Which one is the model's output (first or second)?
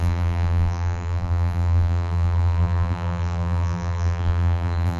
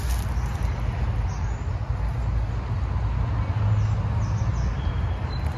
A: first